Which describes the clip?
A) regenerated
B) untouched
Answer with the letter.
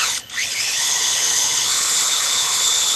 A